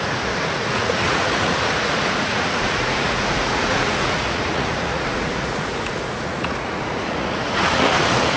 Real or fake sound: fake